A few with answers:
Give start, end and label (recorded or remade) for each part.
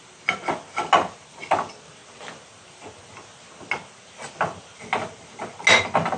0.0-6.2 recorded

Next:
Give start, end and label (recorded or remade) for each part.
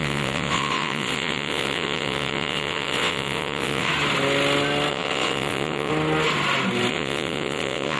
0.0-3.9 remade; 3.9-4.9 recorded; 4.9-5.9 remade; 5.9-6.9 recorded; 6.9-8.0 remade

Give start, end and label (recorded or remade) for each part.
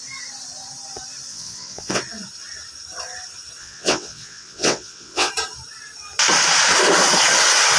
0.0-1.3 recorded; 1.3-2.0 remade; 2.0-3.6 recorded; 3.6-5.3 remade; 5.3-7.8 recorded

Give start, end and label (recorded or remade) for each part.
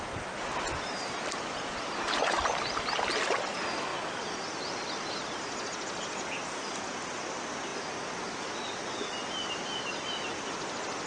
0.0-11.1 recorded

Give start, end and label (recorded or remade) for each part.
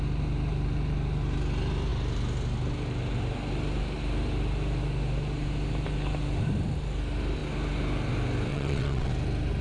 0.0-8.5 recorded; 8.5-9.1 remade; 9.1-9.6 recorded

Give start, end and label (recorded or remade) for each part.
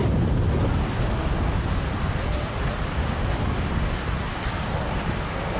0.0-5.6 recorded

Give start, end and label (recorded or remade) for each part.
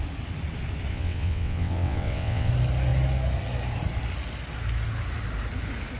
0.0-0.9 recorded; 0.9-2.5 remade; 2.5-6.0 recorded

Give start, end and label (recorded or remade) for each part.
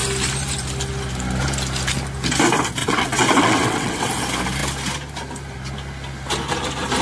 0.0-2.8 recorded; 2.8-4.1 remade; 4.1-7.0 recorded